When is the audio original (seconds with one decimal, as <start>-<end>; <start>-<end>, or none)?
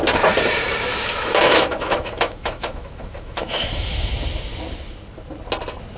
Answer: 0.0-0.9; 4.1-6.0